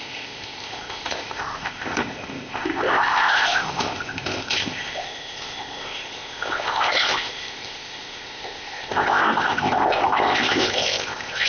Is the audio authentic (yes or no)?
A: no